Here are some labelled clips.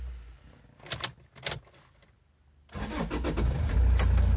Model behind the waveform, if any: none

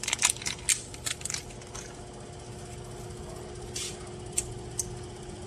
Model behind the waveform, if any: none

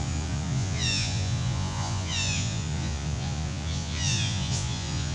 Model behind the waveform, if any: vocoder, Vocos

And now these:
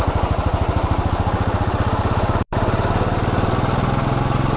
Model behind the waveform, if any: none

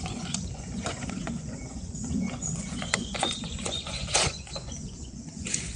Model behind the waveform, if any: vocoder, Vocos